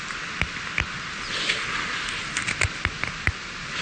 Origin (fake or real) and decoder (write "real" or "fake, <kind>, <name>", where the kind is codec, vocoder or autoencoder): real